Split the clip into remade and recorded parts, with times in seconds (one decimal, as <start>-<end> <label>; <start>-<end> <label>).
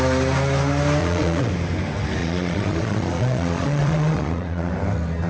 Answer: 0.0-1.0 recorded; 1.0-1.5 remade; 1.5-2.2 recorded; 2.2-4.7 remade; 4.7-5.3 recorded